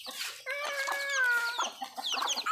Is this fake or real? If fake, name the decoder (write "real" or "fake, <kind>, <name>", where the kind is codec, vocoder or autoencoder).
real